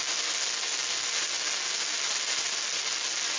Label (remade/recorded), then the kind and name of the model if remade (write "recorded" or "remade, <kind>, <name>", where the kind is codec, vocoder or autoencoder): recorded